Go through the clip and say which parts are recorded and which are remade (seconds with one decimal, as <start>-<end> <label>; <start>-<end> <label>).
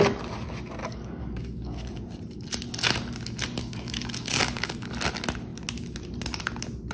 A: 0.0-0.8 recorded; 0.8-1.9 remade; 1.9-3.6 recorded; 3.6-4.9 remade; 4.9-6.9 recorded